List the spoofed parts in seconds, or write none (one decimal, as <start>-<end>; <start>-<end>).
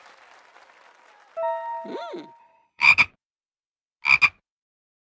2.4-3.1